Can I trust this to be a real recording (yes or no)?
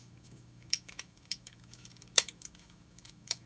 no